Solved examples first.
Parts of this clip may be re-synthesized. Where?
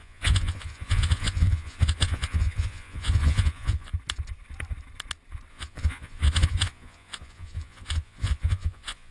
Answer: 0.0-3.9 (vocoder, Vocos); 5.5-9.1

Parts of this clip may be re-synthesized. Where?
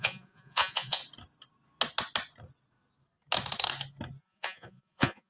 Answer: 0.0-1.0 (vocoder, Vocos); 4.2-5.3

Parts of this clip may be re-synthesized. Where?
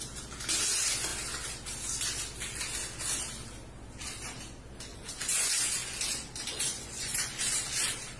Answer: 4.9-5.6 (vocoder, Vocos); 6.5-7.3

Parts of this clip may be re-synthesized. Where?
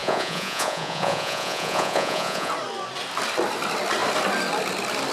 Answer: 0.0-2.5 (vocoder, Vocos)